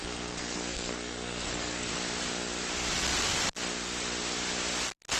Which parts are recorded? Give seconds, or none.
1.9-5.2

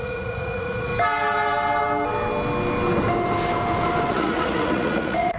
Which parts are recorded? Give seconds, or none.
0.9-4.1

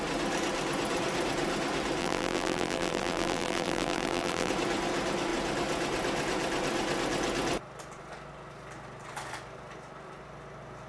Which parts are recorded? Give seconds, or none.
0.0-2.0; 4.5-10.9